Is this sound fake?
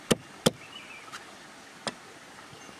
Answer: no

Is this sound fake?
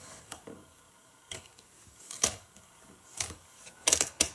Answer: yes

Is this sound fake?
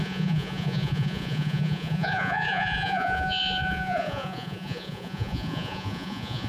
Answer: yes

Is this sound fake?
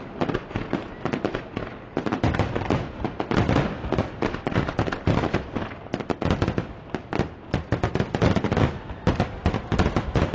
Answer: no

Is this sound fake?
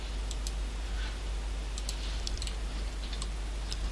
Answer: no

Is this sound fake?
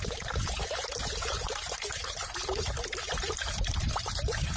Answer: no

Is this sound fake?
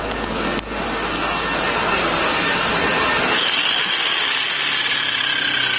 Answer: no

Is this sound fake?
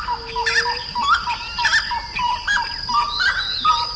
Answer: no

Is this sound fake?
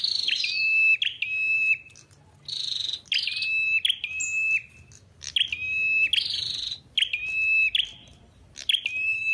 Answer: no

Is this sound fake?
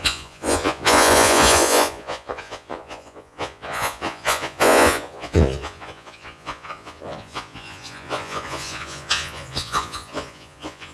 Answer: yes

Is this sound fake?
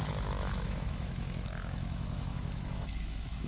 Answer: yes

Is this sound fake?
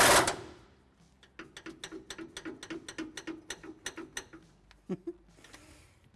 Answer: no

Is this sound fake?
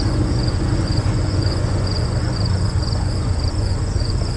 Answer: yes